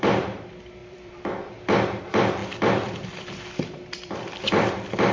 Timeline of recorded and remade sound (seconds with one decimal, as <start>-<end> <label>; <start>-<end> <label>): 0.0-5.1 remade